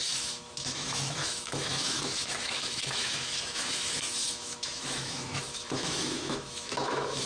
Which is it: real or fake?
fake